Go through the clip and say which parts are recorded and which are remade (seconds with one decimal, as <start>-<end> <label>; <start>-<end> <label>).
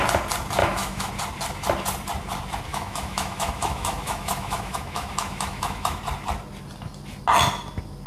0.0-0.6 recorded; 0.6-1.1 remade; 1.1-2.7 recorded; 2.7-6.0 remade; 6.0-8.1 recorded